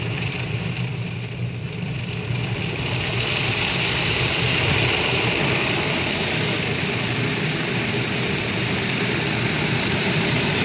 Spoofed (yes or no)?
yes